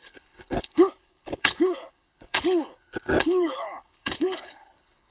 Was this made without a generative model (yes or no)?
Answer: no